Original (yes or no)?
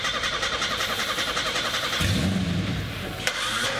no